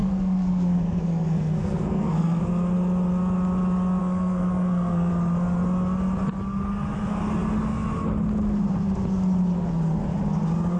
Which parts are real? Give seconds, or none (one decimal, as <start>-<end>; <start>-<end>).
2.4-4.0; 5.1-10.8

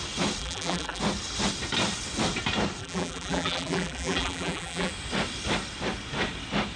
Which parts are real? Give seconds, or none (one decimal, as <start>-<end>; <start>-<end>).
0.0-0.4; 1.0-2.8; 4.9-6.8

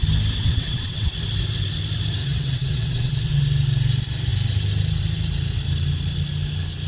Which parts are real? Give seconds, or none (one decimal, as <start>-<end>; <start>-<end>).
0.0-0.4; 1.1-2.2; 3.4-6.9

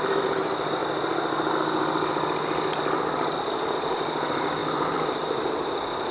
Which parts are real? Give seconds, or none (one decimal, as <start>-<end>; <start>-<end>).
0.8-3.3

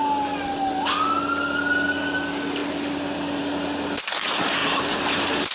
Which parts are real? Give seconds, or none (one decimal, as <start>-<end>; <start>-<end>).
0.0-4.6